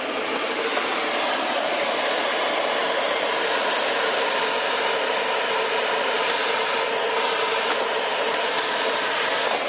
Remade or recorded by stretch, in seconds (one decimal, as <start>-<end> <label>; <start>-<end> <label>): 0.0-0.7 recorded; 0.7-2.2 remade; 2.2-8.1 recorded; 8.1-9.0 remade; 9.0-9.7 recorded